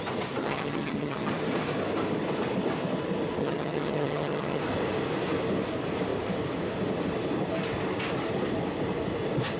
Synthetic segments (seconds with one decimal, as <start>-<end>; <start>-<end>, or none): 0.4-1.3; 3.4-4.6